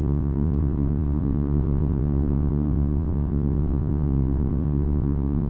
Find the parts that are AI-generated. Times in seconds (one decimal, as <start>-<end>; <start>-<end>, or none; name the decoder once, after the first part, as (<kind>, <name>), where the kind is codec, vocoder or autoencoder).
0.0-5.5 (vocoder, WaveNeXt)